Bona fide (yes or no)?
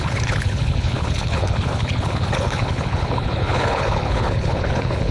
no